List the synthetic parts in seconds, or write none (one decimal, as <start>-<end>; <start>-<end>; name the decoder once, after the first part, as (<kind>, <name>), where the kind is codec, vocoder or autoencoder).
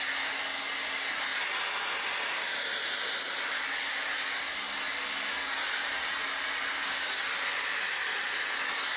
none